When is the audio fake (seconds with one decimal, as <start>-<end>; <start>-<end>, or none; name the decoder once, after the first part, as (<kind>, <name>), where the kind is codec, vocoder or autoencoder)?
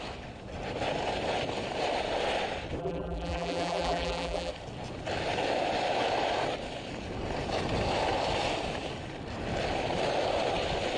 2.8-4.5 (vocoder, BigVGAN v2)